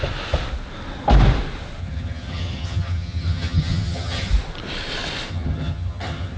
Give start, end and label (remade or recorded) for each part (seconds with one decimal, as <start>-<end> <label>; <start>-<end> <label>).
0.0-1.8 recorded; 1.8-4.3 remade; 4.3-5.3 recorded; 5.3-6.4 remade